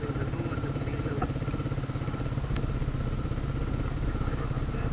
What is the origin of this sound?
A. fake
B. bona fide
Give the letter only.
B